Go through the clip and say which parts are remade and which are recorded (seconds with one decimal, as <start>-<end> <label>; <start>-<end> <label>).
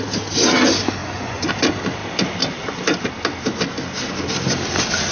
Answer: 0.0-1.0 recorded; 1.0-1.5 remade; 1.5-5.1 recorded